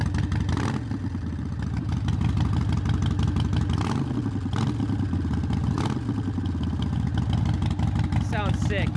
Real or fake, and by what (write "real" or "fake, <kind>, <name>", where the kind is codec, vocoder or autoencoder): real